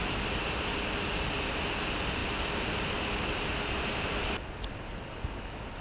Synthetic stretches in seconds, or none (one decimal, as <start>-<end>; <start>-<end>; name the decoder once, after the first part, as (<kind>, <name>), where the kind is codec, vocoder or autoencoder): none